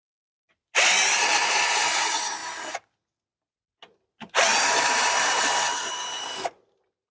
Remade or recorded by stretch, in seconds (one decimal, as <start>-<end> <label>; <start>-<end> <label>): 0.0-7.1 recorded